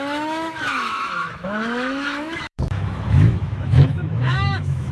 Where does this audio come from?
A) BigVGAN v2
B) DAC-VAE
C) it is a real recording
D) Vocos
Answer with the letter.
B